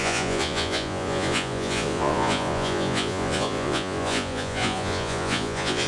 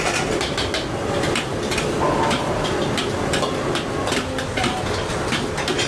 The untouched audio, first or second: second